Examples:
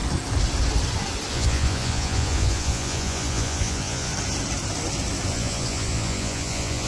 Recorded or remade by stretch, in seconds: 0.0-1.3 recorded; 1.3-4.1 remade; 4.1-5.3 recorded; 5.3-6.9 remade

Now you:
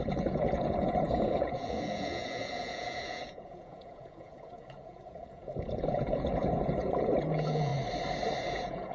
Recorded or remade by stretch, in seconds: 0.0-7.7 remade; 7.7-8.5 recorded; 8.5-8.9 remade

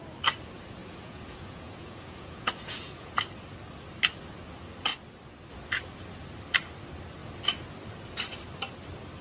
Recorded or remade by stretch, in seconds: 0.0-0.8 recorded; 0.8-3.2 remade; 3.2-9.2 recorded

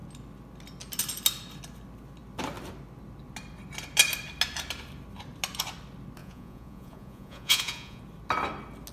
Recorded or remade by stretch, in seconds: 0.0-6.2 recorded; 6.2-8.0 remade; 8.0-8.9 recorded

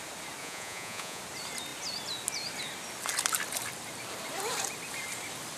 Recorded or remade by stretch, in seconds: 0.0-0.4 recorded; 0.4-1.2 remade; 1.2-5.6 recorded

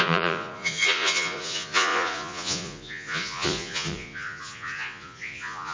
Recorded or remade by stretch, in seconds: 0.0-5.7 remade

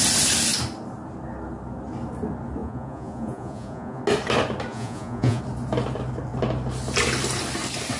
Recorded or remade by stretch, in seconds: 0.0-2.6 recorded; 2.6-4.0 remade; 4.0-4.7 recorded; 4.7-5.4 remade; 5.4-8.0 recorded